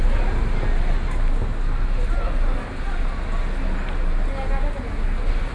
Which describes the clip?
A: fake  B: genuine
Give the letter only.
B